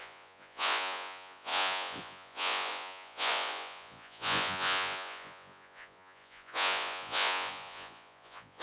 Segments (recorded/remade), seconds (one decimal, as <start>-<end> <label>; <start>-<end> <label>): 0.0-8.6 remade